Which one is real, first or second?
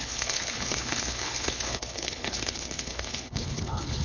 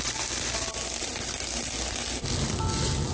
second